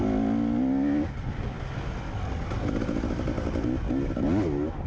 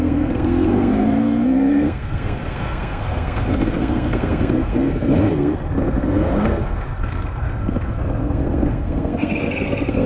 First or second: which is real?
first